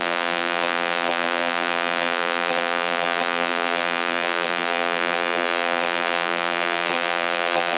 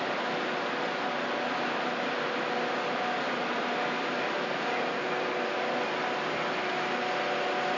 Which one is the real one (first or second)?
second